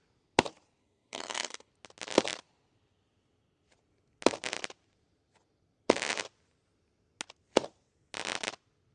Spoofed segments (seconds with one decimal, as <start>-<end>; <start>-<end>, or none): 0.8-1.7